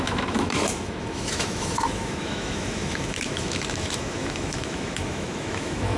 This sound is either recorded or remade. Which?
remade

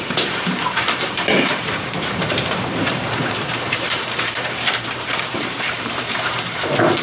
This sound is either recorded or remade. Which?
remade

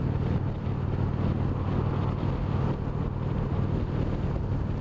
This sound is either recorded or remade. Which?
recorded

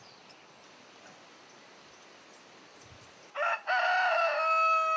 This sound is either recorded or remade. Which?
recorded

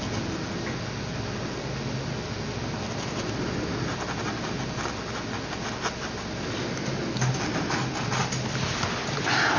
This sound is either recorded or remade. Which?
recorded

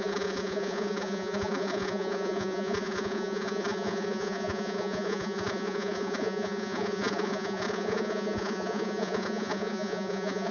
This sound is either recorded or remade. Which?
remade